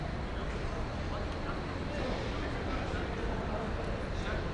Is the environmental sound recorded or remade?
recorded